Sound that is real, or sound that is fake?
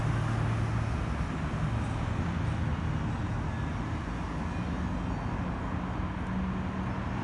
real